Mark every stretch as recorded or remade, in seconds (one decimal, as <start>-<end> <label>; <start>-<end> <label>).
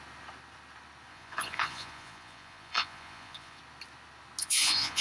0.0-1.1 recorded; 1.1-3.6 remade; 3.6-4.4 recorded; 4.4-5.0 remade